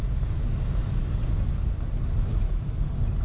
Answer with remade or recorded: recorded